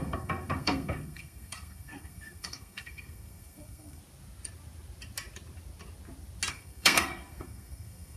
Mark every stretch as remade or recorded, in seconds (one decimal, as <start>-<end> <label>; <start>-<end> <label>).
0.0-4.0 remade; 4.0-6.5 recorded; 6.5-8.2 remade